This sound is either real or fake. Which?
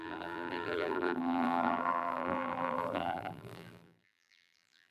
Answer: fake